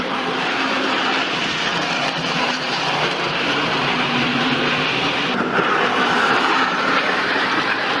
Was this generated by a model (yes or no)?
yes